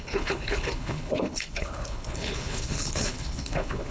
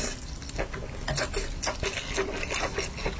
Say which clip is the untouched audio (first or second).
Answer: second